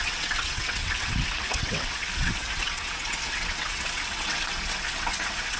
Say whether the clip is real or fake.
fake